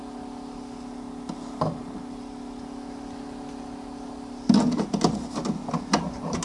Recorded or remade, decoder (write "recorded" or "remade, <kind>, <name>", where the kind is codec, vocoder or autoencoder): recorded